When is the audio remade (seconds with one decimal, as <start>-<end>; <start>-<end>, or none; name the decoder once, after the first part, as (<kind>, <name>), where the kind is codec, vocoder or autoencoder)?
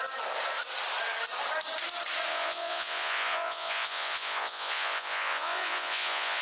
2.3-6.4 (vocoder, Vocos)